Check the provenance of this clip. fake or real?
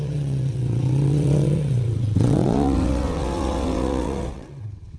fake